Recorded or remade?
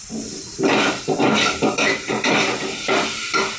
recorded